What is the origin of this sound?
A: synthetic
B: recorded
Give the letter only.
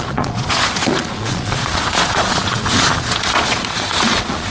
A